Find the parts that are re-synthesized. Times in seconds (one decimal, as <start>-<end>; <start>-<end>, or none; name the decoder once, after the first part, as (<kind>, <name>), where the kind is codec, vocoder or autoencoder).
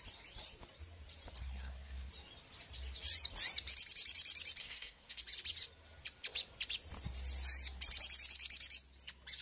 1.4-2.1 (codec, SNAC); 4.6-5.2